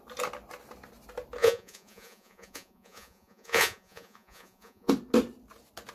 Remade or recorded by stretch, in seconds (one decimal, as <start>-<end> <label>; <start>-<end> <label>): 0.0-1.4 recorded; 1.4-4.9 remade; 4.9-5.9 recorded